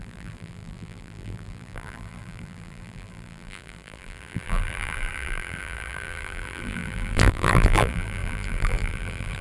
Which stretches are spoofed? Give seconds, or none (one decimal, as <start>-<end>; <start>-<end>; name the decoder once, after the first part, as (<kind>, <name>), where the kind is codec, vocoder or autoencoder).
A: 0.0-9.4 (vocoder, BigVGAN v2)